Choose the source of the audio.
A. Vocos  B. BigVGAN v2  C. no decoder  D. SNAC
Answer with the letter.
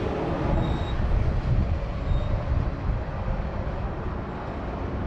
C